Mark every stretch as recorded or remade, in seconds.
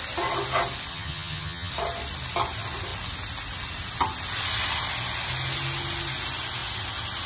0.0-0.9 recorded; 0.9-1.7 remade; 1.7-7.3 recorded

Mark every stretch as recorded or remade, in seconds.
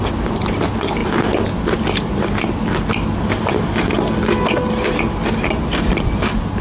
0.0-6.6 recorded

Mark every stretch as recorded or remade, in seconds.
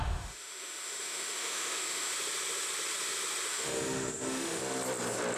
0.0-2.1 remade; 2.1-3.5 recorded; 3.5-4.6 remade; 4.6-5.4 recorded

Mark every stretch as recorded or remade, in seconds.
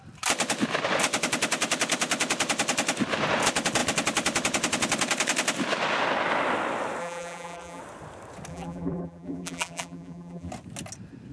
0.0-7.0 recorded; 7.0-7.8 remade; 7.8-8.5 recorded; 8.5-10.5 remade; 10.5-11.3 recorded